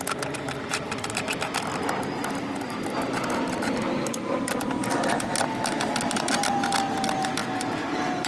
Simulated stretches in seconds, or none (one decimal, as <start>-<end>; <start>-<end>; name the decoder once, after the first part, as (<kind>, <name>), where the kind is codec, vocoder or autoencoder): none